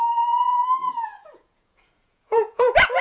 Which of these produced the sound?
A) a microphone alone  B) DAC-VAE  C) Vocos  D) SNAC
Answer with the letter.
C